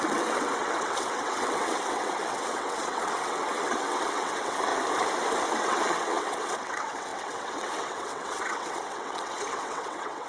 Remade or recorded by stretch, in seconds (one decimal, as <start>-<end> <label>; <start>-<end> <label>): 0.0-4.7 remade; 4.7-5.5 recorded; 5.5-10.3 remade